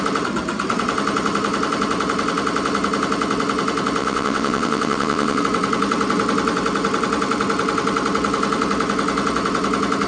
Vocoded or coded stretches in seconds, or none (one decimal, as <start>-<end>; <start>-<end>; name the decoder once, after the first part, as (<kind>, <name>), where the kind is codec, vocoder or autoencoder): 4.0-5.4 (vocoder, WaveNeXt)